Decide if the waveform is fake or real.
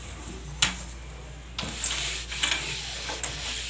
real